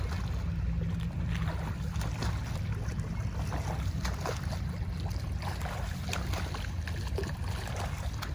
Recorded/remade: recorded